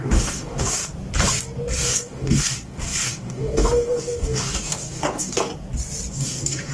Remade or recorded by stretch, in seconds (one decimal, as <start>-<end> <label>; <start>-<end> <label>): 0.0-0.9 remade; 0.9-1.8 recorded; 1.8-5.5 remade; 5.5-6.1 recorded; 6.1-6.7 remade